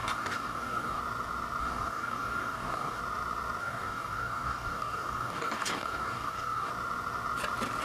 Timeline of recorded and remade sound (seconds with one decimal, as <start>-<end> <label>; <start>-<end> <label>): 0.0-1.0 remade; 1.0-1.6 recorded; 1.6-3.0 remade; 3.0-3.6 recorded; 3.6-6.7 remade; 6.7-7.8 recorded

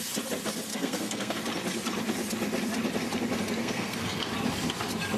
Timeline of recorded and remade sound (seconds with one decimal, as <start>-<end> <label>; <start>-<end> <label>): 0.0-0.7 recorded; 0.7-1.4 remade; 1.4-3.6 recorded; 3.6-4.3 remade; 4.3-5.2 recorded

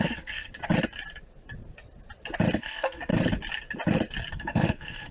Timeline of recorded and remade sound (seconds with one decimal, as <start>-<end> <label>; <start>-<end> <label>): 0.0-0.5 remade; 0.5-2.6 recorded; 2.6-3.1 remade; 3.1-4.3 recorded; 4.3-5.1 remade

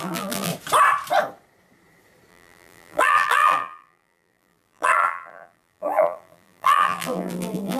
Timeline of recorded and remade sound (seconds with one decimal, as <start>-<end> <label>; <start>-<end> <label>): 0.0-0.5 remade; 0.5-2.3 recorded; 2.3-7.8 remade

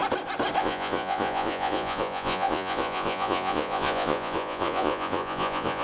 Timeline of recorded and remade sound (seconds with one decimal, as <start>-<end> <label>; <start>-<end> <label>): 0.0-0.6 recorded; 0.6-5.8 remade

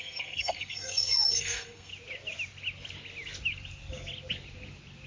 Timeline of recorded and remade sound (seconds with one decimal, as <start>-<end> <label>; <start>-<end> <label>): 0.0-1.9 remade; 1.9-5.1 recorded

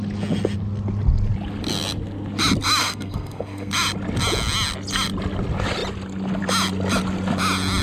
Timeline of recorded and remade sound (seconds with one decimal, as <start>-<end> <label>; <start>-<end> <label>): 0.0-2.8 recorded; 2.8-3.7 remade; 3.7-7.8 recorded